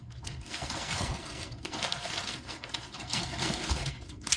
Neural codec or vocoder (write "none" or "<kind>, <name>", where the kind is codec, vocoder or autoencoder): codec, SNAC